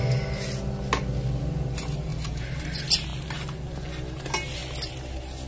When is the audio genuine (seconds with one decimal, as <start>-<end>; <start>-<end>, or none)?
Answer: 0.0-5.5

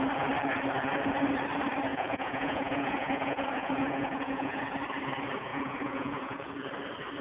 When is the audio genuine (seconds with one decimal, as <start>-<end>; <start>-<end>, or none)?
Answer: 0.0-1.9; 4.6-5.5; 6.5-7.2

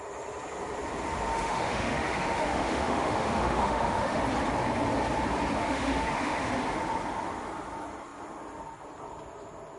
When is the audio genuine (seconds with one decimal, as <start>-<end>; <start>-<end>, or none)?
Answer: 0.0-1.3; 4.2-5.6; 6.5-9.8

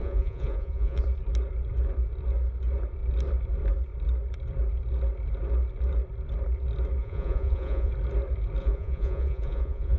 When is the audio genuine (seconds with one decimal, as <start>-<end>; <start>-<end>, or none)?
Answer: 1.0-7.0; 7.9-8.6

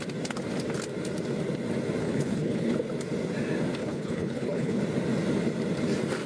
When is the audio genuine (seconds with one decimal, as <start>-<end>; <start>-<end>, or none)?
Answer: 0.0-2.0; 2.7-3.8; 4.8-6.3

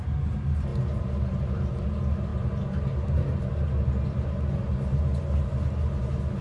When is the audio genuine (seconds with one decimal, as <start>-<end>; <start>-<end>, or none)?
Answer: 0.0-6.4

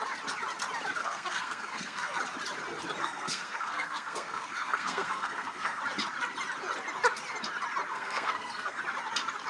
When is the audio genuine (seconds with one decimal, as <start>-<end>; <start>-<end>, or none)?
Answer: 0.0-1.0; 2.2-3.0; 5.8-7.9; 8.8-9.5